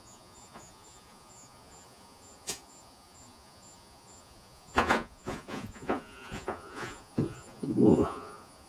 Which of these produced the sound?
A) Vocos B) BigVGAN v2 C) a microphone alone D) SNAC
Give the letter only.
A